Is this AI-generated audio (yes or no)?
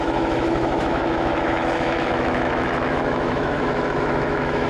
yes